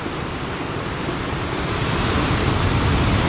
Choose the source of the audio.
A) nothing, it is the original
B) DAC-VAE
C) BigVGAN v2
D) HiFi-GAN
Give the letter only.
A